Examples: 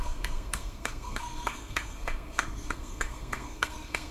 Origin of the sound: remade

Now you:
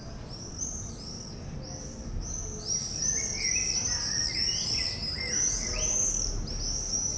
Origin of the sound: recorded